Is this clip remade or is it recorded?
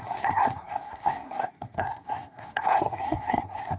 remade